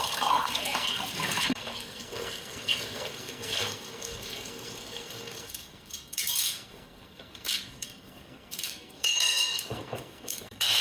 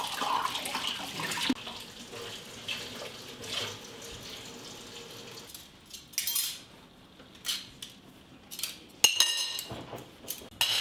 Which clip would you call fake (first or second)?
first